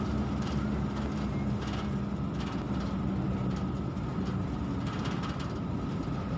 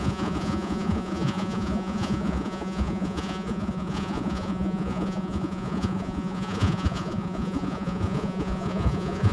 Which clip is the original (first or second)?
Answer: first